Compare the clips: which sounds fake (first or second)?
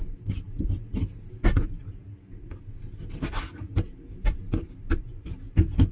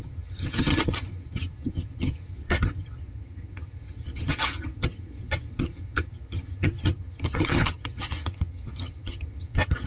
second